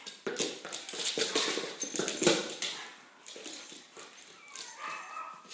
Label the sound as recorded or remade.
recorded